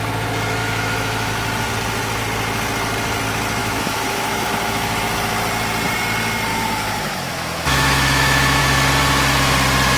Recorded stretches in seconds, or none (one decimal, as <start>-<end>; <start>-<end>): 0.0-0.6; 1.3-3.6; 5.0-6.5; 8.6-10.0